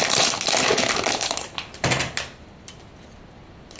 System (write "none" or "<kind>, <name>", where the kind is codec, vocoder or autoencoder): none